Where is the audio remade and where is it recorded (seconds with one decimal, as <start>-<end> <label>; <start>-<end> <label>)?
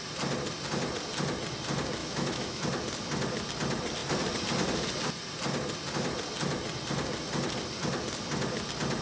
0.0-2.0 recorded; 2.0-2.6 remade; 2.6-9.0 recorded